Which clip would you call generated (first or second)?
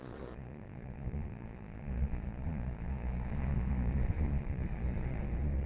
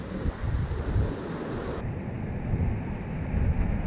first